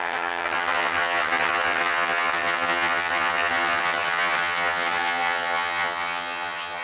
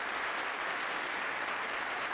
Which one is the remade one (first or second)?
first